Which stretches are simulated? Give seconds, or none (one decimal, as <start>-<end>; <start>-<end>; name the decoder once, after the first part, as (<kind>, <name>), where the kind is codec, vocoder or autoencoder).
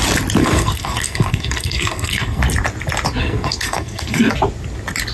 0.4-2.4 (codec, SNAC); 3.2-4.3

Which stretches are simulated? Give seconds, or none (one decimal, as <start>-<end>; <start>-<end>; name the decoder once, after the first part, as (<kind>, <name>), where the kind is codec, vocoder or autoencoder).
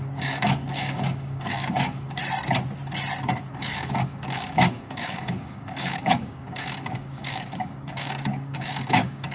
0.0-2.2 (codec, DAC); 3.5-9.3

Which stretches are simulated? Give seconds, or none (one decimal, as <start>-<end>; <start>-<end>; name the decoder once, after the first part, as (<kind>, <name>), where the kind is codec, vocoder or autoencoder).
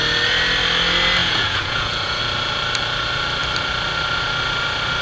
1.2-2.2 (vocoder, Vocos)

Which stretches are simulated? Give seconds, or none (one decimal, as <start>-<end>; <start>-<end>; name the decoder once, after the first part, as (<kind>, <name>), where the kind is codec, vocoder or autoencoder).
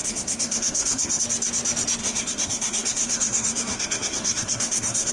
0.0-1.2 (codec, SNAC); 2.0-5.1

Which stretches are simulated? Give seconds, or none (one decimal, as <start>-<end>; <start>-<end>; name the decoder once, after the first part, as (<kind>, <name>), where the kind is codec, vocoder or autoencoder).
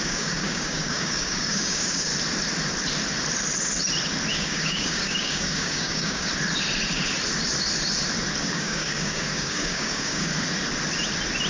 0.0-2.1 (codec, DAC); 4.3-6.3; 8.4-10.3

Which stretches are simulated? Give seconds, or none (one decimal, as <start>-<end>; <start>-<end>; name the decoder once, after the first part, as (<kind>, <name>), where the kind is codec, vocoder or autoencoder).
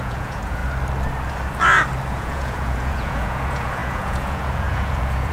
0.0-0.6 (vocoder, Vocos); 2.1-5.3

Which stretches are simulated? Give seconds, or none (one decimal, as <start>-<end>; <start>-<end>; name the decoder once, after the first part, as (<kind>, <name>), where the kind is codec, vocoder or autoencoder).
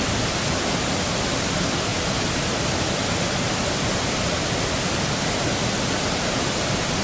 none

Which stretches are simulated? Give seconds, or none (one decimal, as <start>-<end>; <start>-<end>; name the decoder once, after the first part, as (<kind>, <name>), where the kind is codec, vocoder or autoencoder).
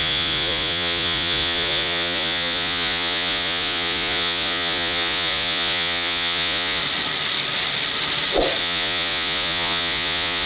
0.0-6.8 (vocoder, Vocos); 8.6-10.5